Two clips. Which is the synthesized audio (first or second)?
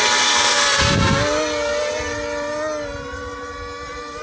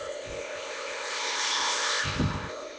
second